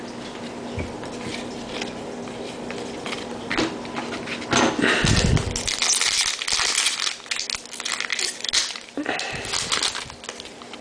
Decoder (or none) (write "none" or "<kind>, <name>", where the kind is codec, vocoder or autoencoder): none